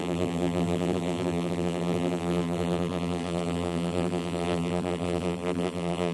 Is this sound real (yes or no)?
no